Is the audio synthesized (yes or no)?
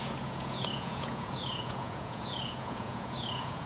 yes